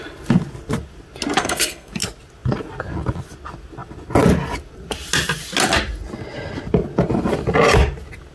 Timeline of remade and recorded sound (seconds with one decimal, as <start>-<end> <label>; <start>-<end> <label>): 0.0-1.4 recorded; 1.4-1.9 remade; 1.9-8.3 recorded